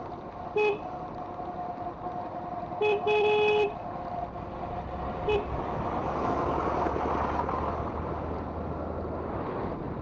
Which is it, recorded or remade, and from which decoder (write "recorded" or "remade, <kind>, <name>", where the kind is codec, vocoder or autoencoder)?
recorded